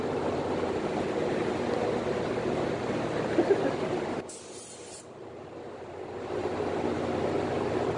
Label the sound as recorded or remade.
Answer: recorded